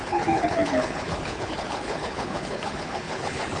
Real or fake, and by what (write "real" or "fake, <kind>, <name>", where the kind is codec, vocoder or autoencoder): fake, codec, HILCodec